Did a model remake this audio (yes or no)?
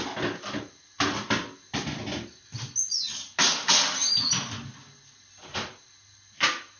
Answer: no